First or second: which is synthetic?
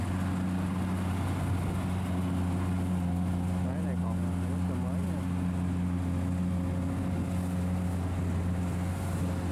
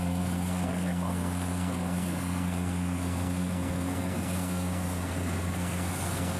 second